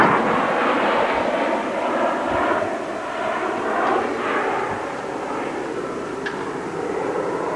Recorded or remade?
recorded